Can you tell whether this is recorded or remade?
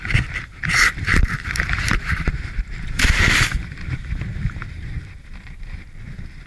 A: remade